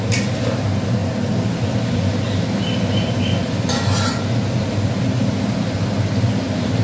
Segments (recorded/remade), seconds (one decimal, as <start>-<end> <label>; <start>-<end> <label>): 0.0-6.8 recorded